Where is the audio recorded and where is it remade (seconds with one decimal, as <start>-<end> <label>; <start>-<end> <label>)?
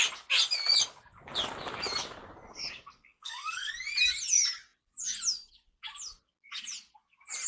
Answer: 0.0-2.9 recorded; 2.9-3.7 remade; 3.7-7.5 recorded